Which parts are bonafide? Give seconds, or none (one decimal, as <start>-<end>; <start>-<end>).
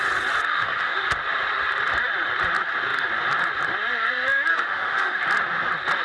0.0-0.5; 1.0-4.5; 5.2-6.0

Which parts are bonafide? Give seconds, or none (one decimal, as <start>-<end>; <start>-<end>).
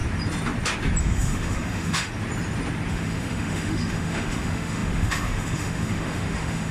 0.0-1.0; 2.1-2.9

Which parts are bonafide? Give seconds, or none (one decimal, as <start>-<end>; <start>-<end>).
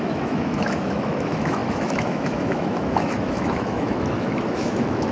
none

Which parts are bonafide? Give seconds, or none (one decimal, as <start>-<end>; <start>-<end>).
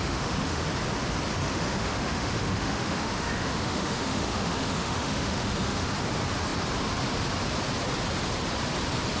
0.6-1.4; 5.9-9.2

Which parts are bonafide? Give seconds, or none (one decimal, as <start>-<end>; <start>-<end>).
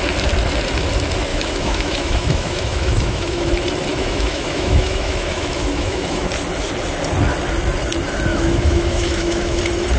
0.0-1.3; 3.5-3.9; 6.3-8.3; 9.6-10.0